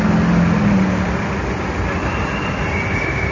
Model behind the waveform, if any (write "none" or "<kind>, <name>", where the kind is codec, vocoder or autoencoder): none